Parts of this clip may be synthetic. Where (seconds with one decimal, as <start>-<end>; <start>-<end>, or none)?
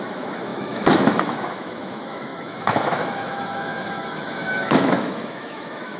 0.0-6.0